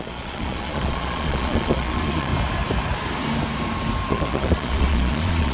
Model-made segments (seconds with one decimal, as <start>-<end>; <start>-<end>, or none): 0.0-2.3; 4.1-5.5